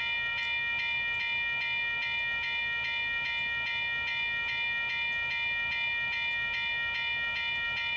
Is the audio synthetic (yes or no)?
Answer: no